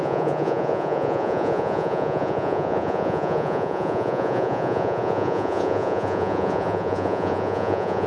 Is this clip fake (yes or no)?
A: yes